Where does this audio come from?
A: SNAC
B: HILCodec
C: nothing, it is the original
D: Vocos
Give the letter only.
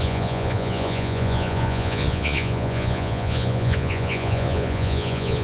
D